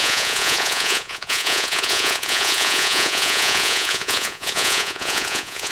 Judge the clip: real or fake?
fake